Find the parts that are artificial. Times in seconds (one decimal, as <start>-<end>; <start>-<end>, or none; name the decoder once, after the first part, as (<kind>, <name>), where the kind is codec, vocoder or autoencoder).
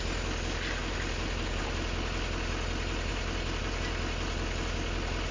0.8-1.6 (vocoder, BigVGAN v2); 3.1-3.6